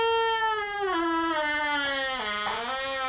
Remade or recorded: recorded